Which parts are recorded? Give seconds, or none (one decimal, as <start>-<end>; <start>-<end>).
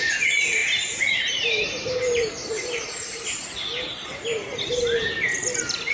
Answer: 0.0-0.6; 4.1-5.9